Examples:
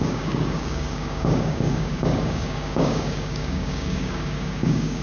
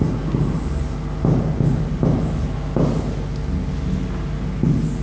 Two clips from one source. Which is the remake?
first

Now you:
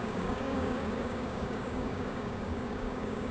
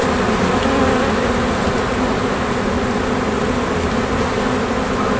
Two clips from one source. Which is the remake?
first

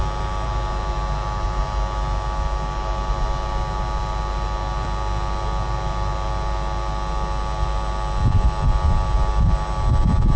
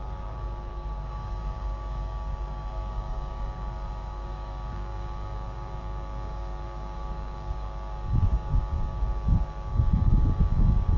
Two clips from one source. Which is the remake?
second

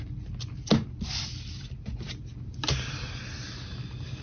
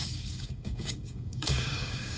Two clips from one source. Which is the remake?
second